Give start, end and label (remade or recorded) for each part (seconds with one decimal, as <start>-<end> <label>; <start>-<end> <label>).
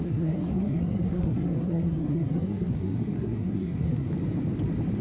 0.0-4.1 remade; 4.1-5.0 recorded